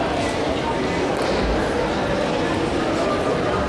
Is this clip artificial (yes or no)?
no